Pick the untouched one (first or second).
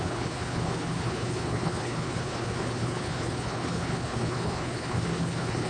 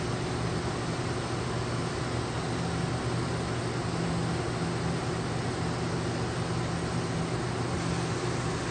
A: second